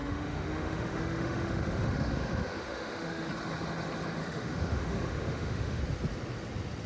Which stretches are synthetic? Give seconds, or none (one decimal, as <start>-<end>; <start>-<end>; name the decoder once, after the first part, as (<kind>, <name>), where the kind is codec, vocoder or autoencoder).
0.0-3.3 (autoencoder, DAC-VAE); 4.2-5.8